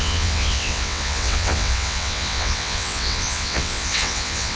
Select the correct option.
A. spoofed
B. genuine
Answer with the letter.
A